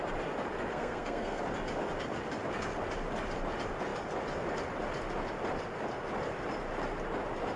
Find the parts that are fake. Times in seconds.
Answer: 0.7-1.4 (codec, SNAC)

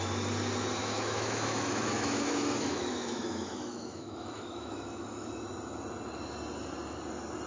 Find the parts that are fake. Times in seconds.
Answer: 0.8-5.3 (autoencoder, DAC-VAE)